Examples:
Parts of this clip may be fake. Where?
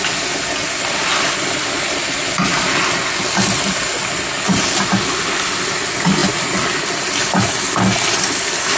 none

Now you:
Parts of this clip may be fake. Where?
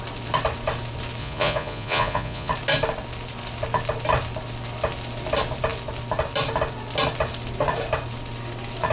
1.2-2.5 (vocoder, Vocos)